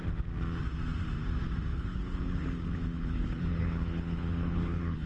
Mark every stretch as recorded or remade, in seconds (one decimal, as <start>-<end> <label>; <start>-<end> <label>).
0.0-1.7 recorded; 1.7-5.1 remade